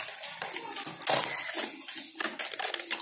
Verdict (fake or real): real